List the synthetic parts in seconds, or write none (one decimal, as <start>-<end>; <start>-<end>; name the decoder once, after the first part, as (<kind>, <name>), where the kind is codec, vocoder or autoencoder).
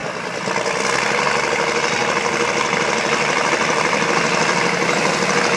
2.0-5.6 (vocoder, BigVGAN v2)